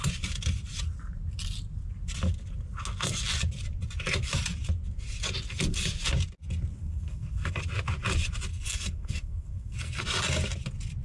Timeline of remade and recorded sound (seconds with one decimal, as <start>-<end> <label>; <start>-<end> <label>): 0.0-6.8 recorded; 6.8-7.6 remade; 7.6-8.5 recorded; 8.5-10.0 remade; 10.0-11.0 recorded